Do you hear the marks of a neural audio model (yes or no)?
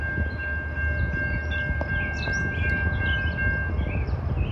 no